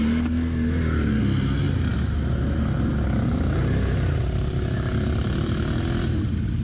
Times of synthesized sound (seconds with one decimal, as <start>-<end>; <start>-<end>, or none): none